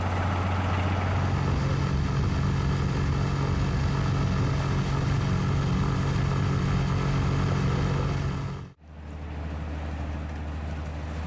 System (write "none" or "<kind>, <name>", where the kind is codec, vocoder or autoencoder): none